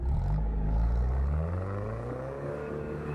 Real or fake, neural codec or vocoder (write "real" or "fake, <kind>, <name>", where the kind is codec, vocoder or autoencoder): fake, codec, DAC